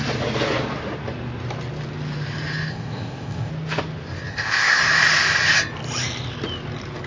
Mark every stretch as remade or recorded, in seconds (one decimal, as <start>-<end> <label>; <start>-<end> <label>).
0.0-2.7 recorded; 2.7-3.5 remade; 3.5-4.3 recorded; 4.3-4.8 remade; 4.8-7.1 recorded